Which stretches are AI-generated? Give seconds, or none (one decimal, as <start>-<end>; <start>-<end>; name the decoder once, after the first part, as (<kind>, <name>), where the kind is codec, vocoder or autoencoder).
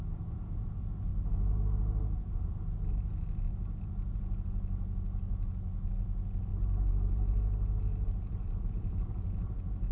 0.0-1.1 (vocoder, Vocos); 3.8-9.9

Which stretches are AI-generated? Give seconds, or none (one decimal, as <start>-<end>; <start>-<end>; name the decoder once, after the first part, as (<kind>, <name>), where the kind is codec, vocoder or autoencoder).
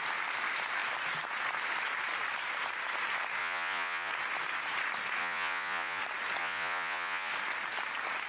3.4-4.1 (vocoder, Vocos); 5.2-6.0; 6.4-7.3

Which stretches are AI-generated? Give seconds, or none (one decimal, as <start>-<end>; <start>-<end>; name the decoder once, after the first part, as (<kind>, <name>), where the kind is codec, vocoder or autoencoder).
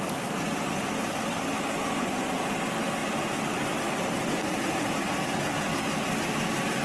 1.8-2.4 (vocoder, Vocos)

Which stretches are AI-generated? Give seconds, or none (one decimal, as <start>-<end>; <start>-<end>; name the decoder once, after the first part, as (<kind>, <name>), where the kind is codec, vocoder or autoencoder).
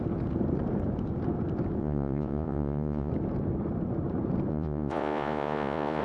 1.8-3.1 (vocoder, Vocos); 4.5-6.0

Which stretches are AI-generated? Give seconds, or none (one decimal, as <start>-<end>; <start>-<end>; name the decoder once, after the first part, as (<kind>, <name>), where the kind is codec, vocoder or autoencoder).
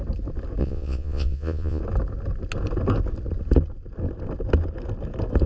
0.6-1.8 (vocoder, Vocos)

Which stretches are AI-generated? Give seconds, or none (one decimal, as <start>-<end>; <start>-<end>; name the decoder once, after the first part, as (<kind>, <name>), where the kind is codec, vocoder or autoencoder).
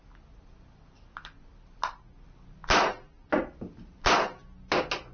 none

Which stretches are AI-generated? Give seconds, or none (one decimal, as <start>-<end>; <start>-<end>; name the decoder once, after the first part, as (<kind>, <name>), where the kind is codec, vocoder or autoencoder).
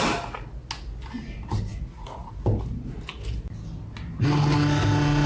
1.7-2.4 (vocoder, Vocos)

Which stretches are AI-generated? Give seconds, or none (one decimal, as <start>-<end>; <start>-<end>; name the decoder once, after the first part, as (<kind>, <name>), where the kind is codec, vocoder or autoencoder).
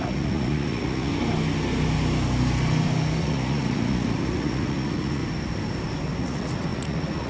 0.0-1.1 (vocoder, Vocos); 3.2-5.2; 6.2-7.3